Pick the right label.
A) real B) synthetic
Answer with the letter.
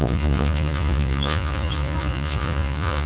B